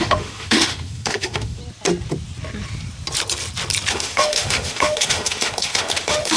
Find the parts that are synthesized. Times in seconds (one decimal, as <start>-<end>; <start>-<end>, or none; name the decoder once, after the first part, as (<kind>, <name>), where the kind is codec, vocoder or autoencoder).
0.0-1.6 (autoencoder, DAC-VAE); 3.9-6.4